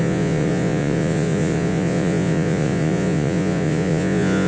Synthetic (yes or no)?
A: yes